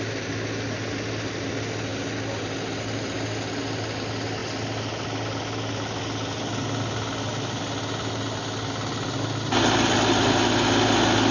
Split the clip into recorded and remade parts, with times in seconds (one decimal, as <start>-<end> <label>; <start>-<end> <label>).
0.0-11.3 recorded